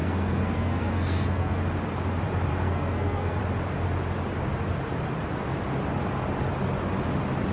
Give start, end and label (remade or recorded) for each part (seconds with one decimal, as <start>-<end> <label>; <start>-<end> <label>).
0.0-1.6 remade; 1.6-2.5 recorded; 2.5-3.4 remade; 3.4-7.5 recorded